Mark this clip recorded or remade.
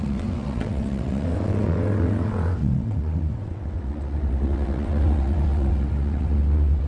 remade